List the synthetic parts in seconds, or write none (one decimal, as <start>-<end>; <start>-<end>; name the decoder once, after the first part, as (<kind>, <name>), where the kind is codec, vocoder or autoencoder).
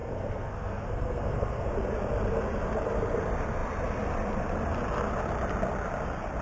0.0-1.7 (codec, SNAC)